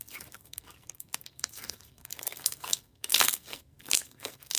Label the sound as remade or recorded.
remade